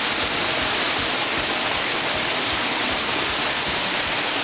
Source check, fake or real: real